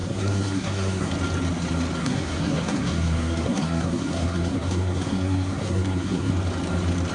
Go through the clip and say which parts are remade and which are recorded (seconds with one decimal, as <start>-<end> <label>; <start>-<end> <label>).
0.0-1.1 remade; 1.1-2.0 recorded; 2.0-6.3 remade; 6.3-7.1 recorded